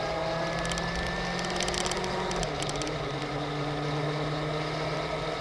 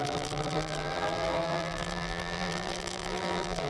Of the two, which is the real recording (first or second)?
first